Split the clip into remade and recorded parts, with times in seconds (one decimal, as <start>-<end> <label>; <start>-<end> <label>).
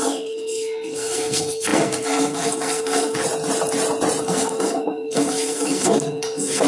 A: 0.0-3.2 remade; 3.2-4.2 recorded; 4.2-6.7 remade